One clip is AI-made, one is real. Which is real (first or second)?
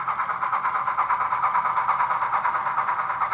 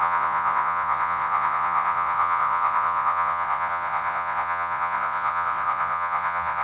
first